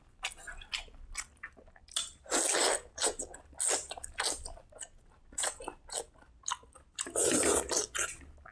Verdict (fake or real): real